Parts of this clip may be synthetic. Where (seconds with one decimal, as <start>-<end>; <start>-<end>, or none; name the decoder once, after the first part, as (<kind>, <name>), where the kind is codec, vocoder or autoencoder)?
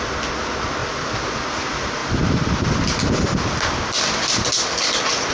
none